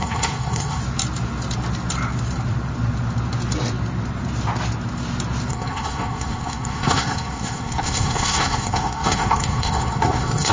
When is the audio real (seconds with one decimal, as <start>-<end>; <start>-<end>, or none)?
0.8-5.5